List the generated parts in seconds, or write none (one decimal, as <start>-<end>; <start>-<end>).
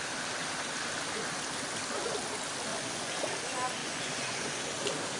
2.7-3.2; 3.8-4.6